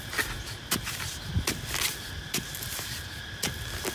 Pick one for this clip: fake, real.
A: real